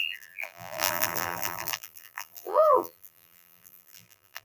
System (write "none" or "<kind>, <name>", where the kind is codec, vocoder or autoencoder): vocoder, BigVGAN v2